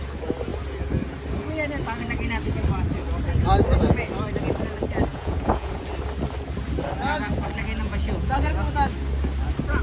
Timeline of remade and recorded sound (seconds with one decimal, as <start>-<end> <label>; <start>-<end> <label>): 0.0-5.1 recorded; 5.1-5.8 remade; 5.8-7.8 recorded; 7.8-8.5 remade; 8.5-9.8 recorded